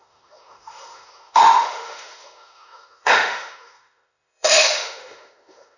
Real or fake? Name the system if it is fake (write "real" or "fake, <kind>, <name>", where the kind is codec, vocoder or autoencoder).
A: fake, autoencoder, DAC-VAE